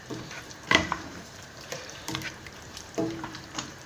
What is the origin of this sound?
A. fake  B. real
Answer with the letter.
A